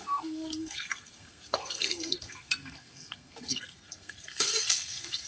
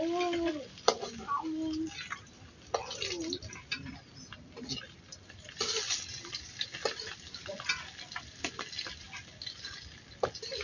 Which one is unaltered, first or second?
second